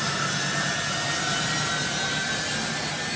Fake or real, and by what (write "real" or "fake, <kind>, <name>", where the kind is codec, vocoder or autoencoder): real